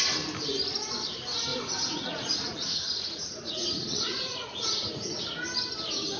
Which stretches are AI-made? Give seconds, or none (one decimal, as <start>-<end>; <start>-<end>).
1.5-5.2